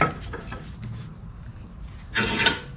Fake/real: real